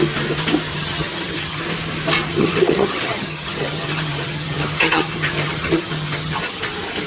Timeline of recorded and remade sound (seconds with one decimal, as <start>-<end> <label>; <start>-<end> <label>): 0.0-0.7 recorded; 0.7-1.6 remade; 1.6-2.3 recorded; 2.3-6.6 remade; 6.6-7.1 recorded